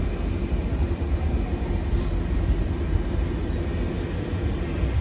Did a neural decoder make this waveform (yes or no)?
no